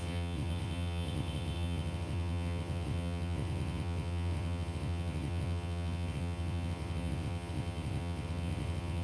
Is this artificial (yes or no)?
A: yes